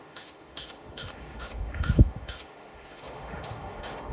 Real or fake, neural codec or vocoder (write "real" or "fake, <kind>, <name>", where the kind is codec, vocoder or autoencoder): fake, autoencoder, DAC-VAE